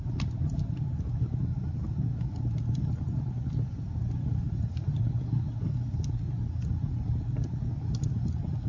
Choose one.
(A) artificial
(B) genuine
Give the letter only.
B